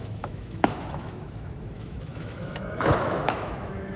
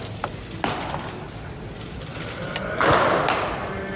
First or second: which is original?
second